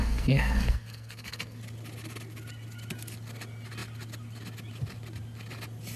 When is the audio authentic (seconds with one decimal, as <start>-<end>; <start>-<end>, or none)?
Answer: 1.6-6.0